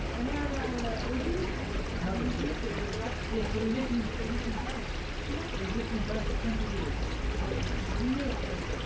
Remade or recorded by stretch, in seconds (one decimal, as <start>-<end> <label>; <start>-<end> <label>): 0.0-1.4 recorded; 1.4-2.0 remade; 2.0-8.9 recorded